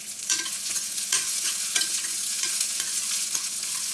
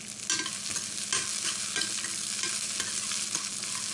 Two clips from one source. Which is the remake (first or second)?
first